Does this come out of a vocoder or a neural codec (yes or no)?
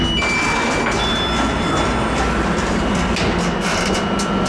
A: no